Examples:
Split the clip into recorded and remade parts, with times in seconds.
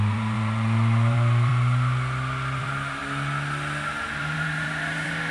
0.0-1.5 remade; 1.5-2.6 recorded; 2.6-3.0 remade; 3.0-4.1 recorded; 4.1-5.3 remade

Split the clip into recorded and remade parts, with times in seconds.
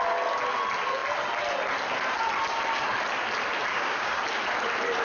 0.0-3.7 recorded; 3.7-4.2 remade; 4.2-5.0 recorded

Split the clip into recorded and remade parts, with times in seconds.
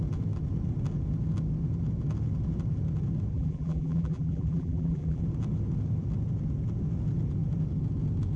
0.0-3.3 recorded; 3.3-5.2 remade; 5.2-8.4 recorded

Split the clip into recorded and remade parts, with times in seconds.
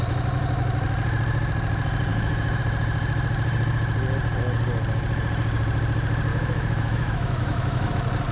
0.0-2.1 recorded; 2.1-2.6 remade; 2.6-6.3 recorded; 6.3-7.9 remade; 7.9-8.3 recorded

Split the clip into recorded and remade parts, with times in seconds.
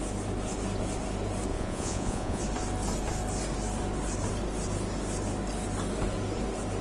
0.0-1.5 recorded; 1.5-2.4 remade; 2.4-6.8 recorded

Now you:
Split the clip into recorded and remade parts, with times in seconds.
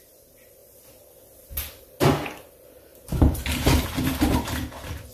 0.0-2.9 recorded; 2.9-4.2 remade; 4.2-5.1 recorded